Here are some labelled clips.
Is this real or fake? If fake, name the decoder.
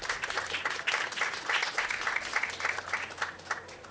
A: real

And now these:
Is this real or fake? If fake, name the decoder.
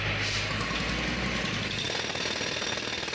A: real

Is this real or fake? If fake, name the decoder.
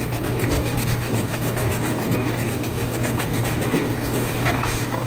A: fake, codec, DAC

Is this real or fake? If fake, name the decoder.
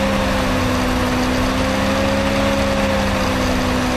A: real